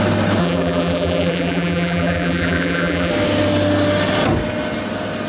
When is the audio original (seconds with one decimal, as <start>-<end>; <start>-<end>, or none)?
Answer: 0.0-0.4; 3.1-5.3